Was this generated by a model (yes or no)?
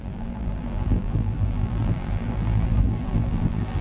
yes